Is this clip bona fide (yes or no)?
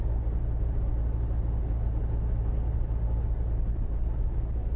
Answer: yes